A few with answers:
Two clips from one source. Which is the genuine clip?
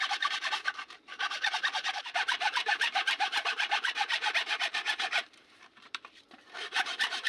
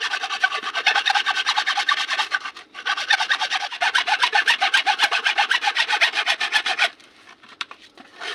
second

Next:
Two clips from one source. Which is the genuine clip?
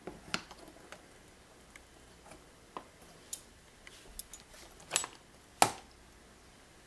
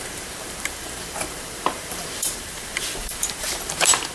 first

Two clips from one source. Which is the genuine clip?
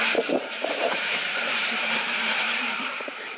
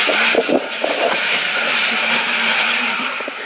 second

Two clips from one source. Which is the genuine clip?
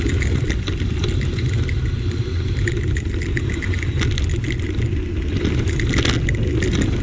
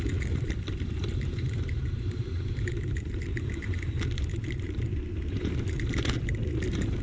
first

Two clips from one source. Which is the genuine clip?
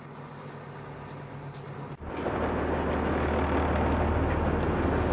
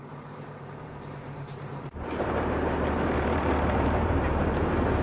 first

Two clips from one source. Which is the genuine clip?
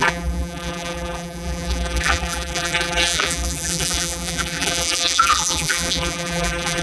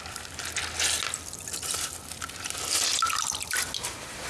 second